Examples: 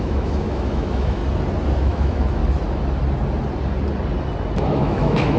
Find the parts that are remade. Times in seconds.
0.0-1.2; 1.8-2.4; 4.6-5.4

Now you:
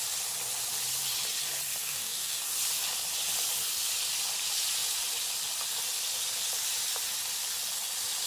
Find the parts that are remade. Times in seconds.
1.8-2.4

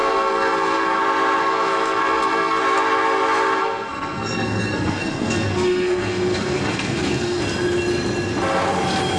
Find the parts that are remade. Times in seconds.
0.0-1.0; 1.4-2.6; 3.6-7.4